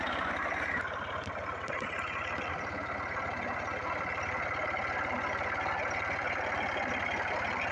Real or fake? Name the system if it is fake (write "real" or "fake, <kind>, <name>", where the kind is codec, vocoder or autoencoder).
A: real